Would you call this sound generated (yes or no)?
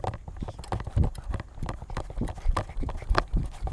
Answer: no